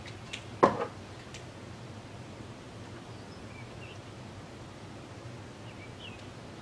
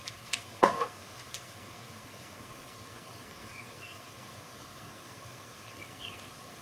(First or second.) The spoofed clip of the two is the second